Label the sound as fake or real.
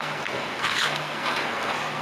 fake